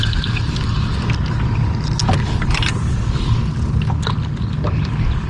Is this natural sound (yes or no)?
yes